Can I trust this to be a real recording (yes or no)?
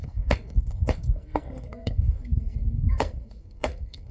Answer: no